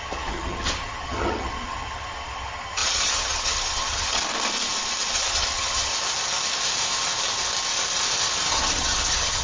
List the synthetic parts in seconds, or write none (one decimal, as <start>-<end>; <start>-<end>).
0.0-4.2; 5.1-5.9; 8.5-9.4